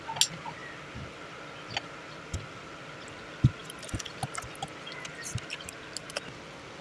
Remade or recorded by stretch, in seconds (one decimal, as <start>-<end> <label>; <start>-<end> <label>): 0.0-6.8 recorded